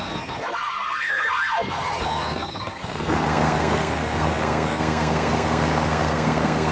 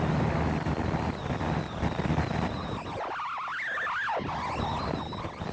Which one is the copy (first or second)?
first